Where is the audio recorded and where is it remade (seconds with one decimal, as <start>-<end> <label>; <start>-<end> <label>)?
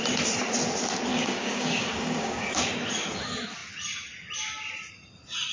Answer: 0.0-1.1 recorded; 1.1-2.5 remade; 2.5-5.5 recorded